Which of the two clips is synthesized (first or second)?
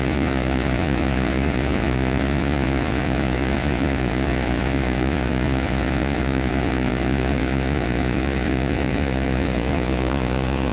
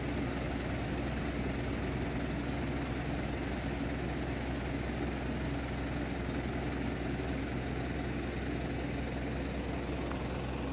first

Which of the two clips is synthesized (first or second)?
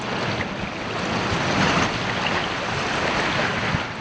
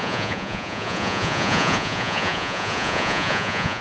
second